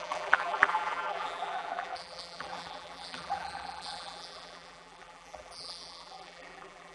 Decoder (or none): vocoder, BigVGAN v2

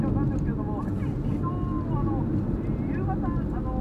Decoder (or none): none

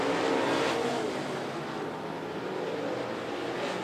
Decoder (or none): none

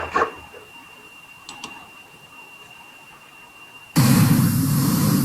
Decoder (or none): vocoder, BigVGAN v2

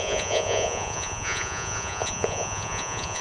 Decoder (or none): vocoder, Vocos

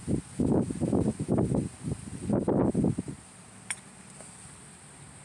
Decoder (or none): none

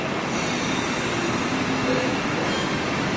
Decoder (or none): none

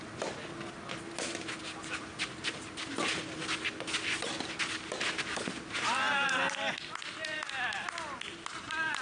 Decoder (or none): none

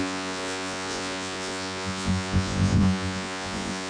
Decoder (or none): vocoder, Vocos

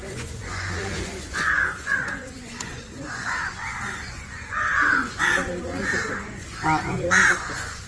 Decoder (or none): vocoder, Vocos